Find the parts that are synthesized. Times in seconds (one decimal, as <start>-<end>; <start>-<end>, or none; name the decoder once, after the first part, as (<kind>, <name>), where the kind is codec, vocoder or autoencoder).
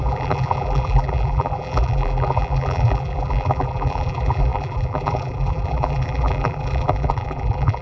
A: 0.0-7.8 (vocoder, BigVGAN v2)